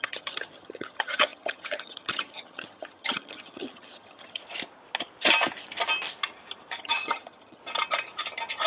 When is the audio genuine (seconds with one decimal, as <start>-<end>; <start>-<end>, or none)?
4.4-6.8; 7.6-8.7